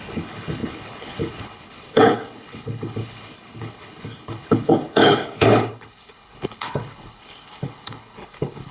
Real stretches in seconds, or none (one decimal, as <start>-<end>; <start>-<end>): none